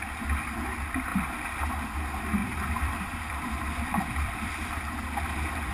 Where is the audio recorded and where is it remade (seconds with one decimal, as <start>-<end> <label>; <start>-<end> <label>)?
0.0-2.4 recorded; 2.4-4.9 remade; 4.9-5.7 recorded